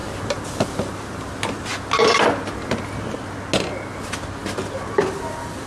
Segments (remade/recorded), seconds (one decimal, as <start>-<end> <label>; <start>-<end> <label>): 0.0-5.7 recorded